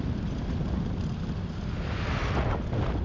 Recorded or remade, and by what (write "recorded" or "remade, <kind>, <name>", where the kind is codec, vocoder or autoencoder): recorded